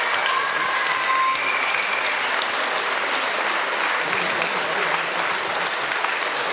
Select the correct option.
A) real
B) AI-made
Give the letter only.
A